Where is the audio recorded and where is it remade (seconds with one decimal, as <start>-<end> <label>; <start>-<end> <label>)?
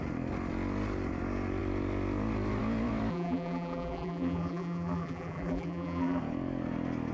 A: 0.0-3.1 recorded; 3.1-6.2 remade; 6.2-7.1 recorded